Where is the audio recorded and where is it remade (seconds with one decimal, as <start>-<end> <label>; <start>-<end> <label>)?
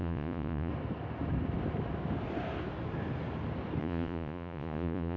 0.0-0.7 remade; 0.7-3.8 recorded; 3.8-5.2 remade